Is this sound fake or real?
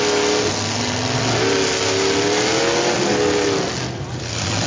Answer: real